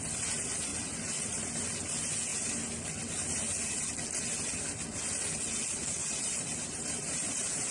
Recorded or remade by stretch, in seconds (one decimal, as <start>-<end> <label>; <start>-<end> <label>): 0.0-0.7 recorded; 0.7-1.5 remade; 1.5-6.0 recorded; 6.0-7.7 remade